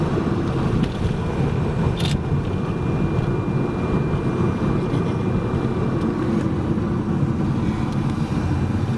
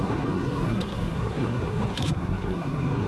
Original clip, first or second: first